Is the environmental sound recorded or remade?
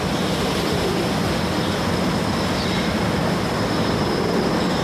recorded